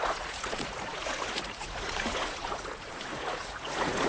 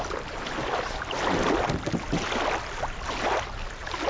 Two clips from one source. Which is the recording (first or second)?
second